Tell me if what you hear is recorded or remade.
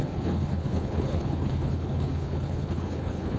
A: remade